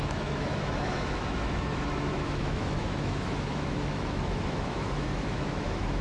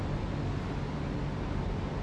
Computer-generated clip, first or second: first